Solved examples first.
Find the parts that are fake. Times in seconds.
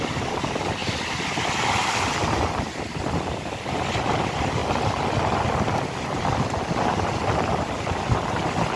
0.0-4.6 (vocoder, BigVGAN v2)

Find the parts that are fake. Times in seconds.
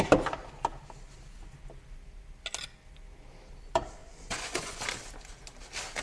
4.0-4.8 (vocoder, Vocos)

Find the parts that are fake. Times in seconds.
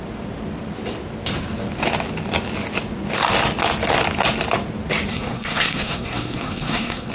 5.1-7.1 (codec, SNAC)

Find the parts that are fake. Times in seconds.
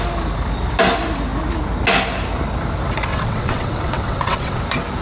3.1-4.6 (vocoder, WaveNeXt)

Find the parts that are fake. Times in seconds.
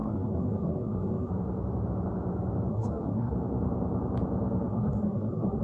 0.0-1.3 (codec, SNAC); 2.7-3.3; 4.7-5.6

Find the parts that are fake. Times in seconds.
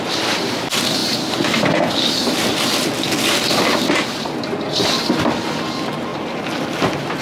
none